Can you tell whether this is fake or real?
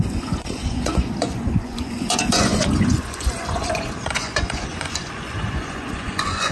fake